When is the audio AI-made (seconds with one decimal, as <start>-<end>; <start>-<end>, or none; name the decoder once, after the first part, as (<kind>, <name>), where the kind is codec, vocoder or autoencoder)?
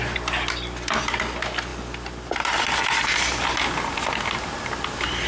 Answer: none